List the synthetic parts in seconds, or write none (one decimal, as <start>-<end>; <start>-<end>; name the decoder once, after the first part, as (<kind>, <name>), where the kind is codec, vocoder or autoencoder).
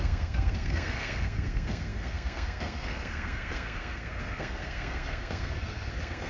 0.0-6.3 (codec, SNAC)